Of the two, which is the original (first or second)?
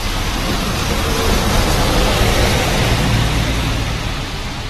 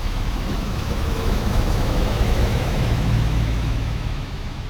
first